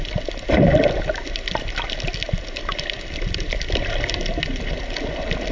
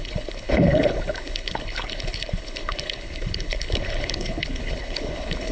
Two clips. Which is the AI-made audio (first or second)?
second